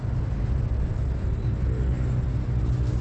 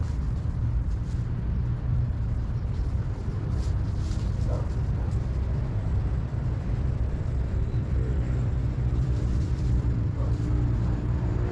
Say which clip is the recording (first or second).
first